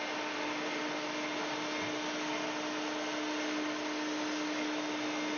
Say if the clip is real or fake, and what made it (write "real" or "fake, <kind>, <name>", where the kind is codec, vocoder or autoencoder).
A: real